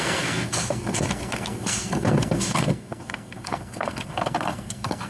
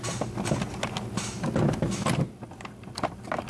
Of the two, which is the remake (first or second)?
first